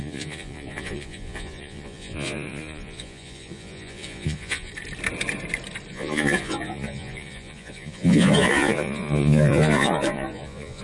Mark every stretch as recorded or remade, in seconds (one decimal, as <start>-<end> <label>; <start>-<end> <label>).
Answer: 0.0-4.7 remade; 4.7-5.9 recorded; 5.9-10.8 remade